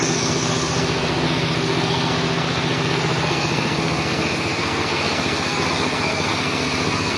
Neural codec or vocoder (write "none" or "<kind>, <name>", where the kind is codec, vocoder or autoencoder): codec, SNAC